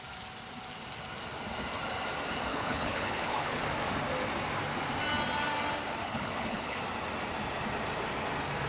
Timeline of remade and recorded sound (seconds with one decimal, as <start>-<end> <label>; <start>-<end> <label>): 0.0-2.5 recorded; 2.5-3.6 remade; 3.6-6.0 recorded; 6.0-6.8 remade; 6.8-8.7 recorded